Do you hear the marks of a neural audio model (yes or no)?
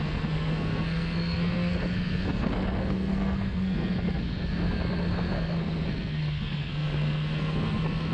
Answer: yes